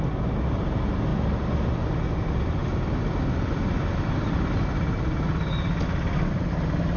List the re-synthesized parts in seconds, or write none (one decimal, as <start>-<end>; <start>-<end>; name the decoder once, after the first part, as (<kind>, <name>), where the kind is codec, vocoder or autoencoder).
none